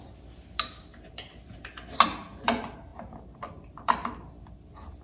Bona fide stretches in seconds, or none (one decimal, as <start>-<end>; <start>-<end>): 0.0-0.9; 1.7-2.9; 4.3-5.0